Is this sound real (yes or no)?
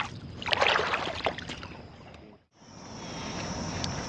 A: yes